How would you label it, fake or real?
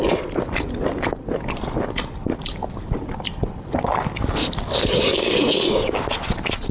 real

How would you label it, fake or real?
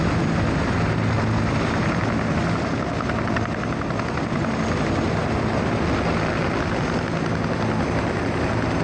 real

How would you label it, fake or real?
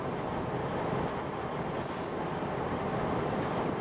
real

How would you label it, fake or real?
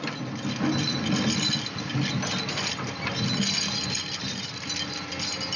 real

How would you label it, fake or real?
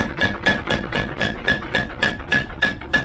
fake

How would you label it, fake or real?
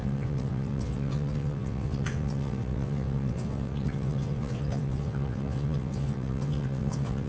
fake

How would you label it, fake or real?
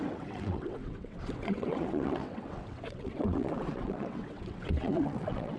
fake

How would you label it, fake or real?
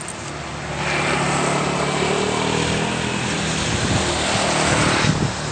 real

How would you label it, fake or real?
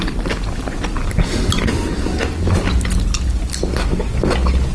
real